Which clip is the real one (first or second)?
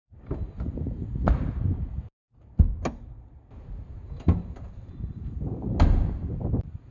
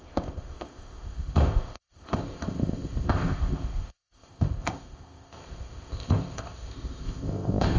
first